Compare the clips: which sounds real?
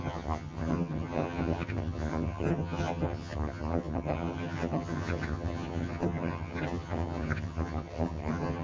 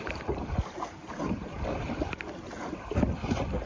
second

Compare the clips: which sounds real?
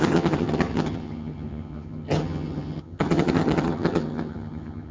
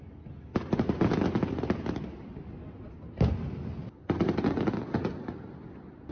second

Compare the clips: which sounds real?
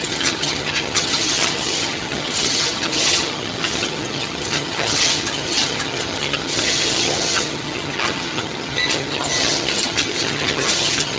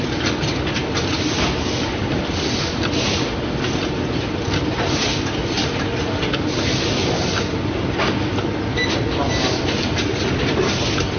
second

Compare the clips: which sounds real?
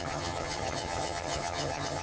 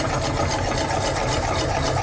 second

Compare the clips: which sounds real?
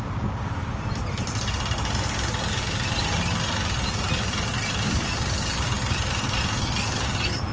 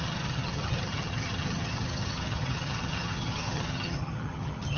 first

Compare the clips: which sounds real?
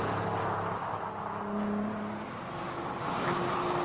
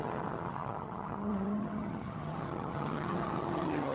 first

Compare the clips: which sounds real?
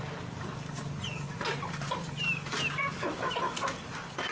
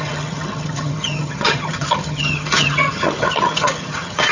first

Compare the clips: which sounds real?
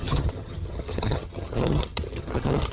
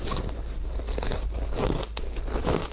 second